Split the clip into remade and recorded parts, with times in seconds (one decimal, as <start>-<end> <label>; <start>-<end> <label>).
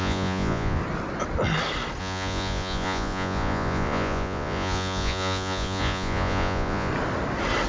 0.0-0.8 remade; 0.8-2.0 recorded; 2.0-6.9 remade; 6.9-7.7 recorded